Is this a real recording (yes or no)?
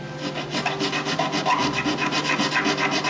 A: yes